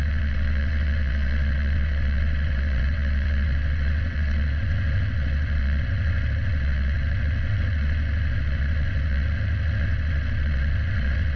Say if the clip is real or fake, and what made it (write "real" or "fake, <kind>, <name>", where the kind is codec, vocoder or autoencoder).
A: fake, vocoder, WaveNeXt